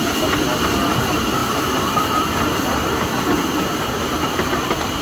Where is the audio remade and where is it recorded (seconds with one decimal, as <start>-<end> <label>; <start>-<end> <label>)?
0.0-5.0 recorded